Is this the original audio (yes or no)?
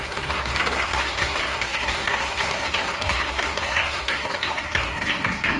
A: no